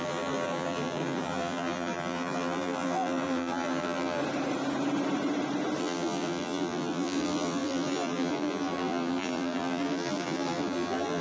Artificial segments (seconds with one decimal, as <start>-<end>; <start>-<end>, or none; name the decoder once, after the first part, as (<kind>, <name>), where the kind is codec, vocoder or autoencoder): 0.0-4.2 (vocoder, BigVGAN v2); 5.8-11.2